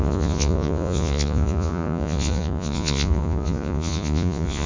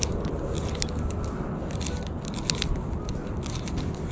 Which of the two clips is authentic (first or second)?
second